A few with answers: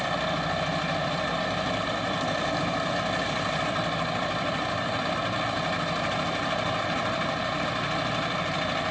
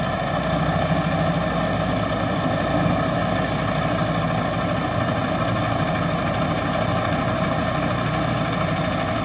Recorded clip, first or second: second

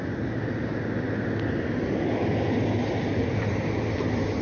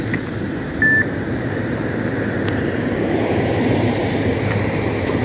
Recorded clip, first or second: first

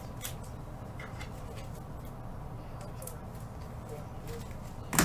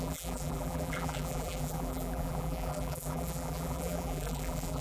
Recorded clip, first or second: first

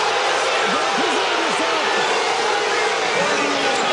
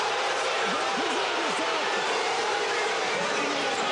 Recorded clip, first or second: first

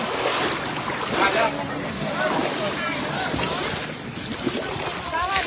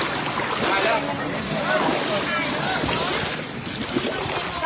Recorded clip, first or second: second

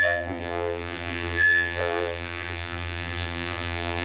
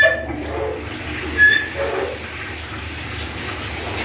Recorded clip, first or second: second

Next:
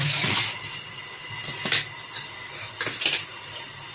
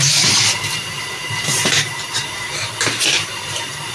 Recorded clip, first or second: first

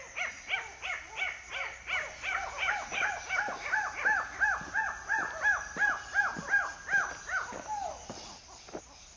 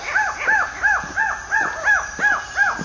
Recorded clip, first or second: second